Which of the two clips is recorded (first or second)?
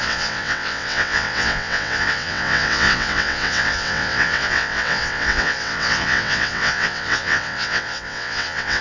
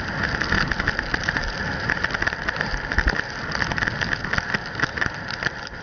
second